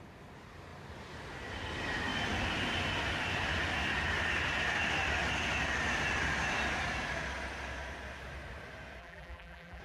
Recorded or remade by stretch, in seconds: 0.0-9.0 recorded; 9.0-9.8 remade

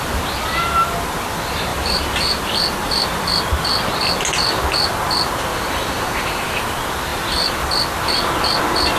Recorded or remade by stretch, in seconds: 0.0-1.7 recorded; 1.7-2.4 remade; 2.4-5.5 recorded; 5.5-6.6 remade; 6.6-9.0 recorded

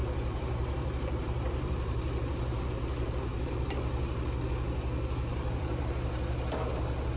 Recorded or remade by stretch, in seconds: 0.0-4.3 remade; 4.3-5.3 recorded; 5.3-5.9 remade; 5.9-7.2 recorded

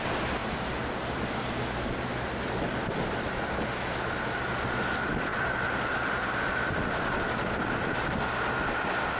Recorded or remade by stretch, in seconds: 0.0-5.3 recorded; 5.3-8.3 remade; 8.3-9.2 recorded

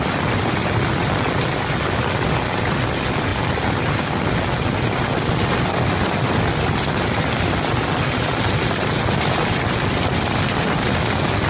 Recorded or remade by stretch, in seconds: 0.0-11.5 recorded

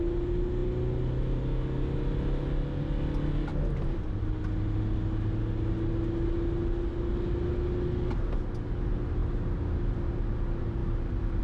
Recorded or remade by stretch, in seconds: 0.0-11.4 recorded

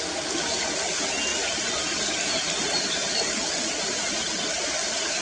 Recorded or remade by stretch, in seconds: 0.0-5.2 recorded

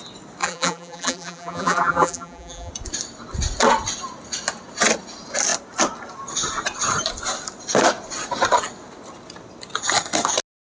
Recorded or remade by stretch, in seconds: 0.0-0.4 recorded; 0.4-2.7 remade; 2.7-10.7 recorded